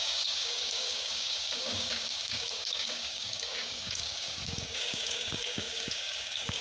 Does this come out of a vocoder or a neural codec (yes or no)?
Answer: yes